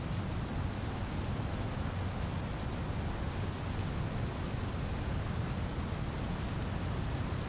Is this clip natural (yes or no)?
yes